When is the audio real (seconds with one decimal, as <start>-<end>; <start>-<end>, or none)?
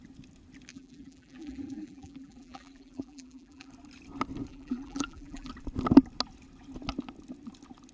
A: 0.0-0.7; 3.7-4.5; 5.5-7.9